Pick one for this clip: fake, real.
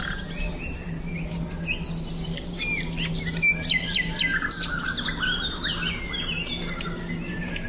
real